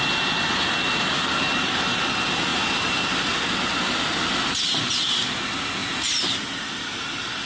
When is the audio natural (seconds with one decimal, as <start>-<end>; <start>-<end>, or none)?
0.0-2.5; 3.4-7.5